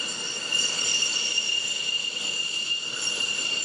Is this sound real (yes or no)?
yes